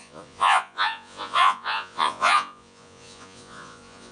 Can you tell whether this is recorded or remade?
remade